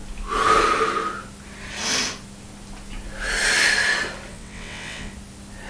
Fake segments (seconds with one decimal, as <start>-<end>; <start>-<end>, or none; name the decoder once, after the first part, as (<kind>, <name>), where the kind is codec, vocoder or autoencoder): 4.3-5.1 (vocoder, WaveNeXt)